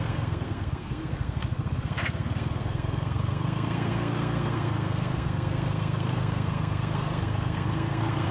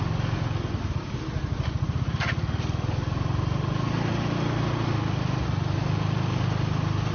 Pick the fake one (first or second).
first